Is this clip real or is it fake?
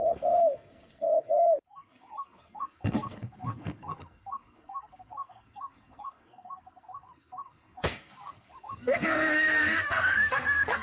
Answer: fake